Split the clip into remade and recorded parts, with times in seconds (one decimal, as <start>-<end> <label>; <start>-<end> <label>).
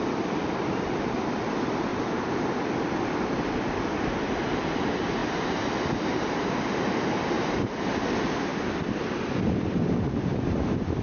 0.0-1.9 remade; 1.9-4.8 recorded; 4.8-5.2 remade; 5.2-5.8 recorded; 5.8-8.5 remade; 8.5-10.3 recorded; 10.3-11.0 remade